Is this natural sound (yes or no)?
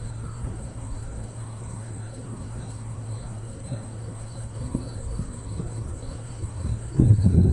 no